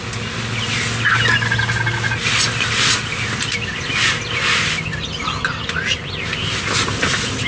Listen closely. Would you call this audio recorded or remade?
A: recorded